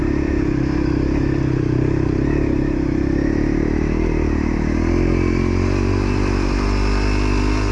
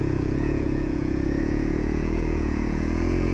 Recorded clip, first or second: first